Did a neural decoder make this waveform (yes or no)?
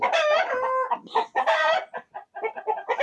no